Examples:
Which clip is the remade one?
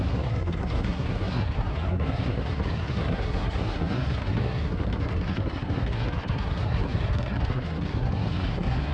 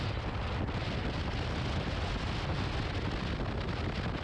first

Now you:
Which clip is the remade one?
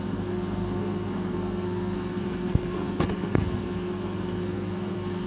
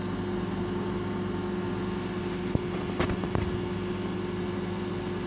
first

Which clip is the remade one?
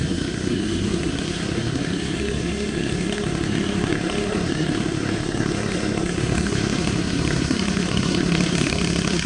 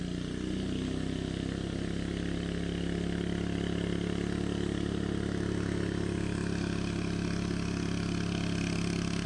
first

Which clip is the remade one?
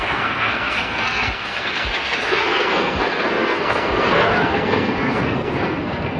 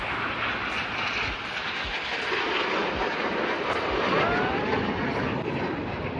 first